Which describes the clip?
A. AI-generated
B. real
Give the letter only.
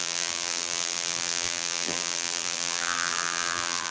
A